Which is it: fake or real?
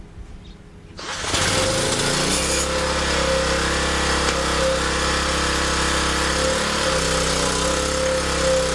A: real